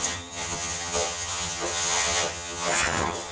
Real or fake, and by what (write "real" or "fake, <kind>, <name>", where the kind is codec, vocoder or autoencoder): fake, vocoder, HiFi-GAN